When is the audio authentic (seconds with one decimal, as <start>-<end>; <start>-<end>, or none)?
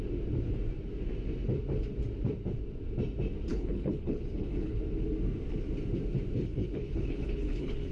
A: 0.0-3.5; 4.8-6.4